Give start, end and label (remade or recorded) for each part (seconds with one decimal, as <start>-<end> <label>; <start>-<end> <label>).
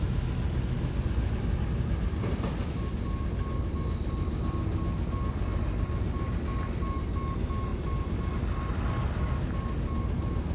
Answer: 0.0-10.5 recorded